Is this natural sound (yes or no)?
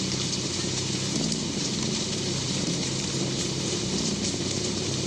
no